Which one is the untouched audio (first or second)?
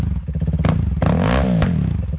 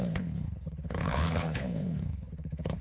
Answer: first